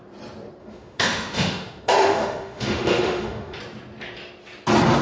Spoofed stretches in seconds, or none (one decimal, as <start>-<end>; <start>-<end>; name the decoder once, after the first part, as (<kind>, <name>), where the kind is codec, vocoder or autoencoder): 0.6-3.6 (autoencoder, DAC-VAE)